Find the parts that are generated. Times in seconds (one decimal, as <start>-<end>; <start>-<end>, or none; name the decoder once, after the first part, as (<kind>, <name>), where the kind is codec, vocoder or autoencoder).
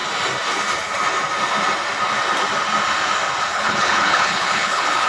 3.5-5.1 (codec, HILCodec)